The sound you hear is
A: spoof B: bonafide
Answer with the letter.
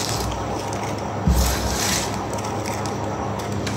B